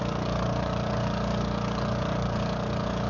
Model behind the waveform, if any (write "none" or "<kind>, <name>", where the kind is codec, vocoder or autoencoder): codec, DAC